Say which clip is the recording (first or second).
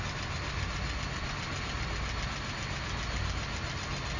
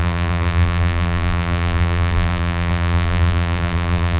first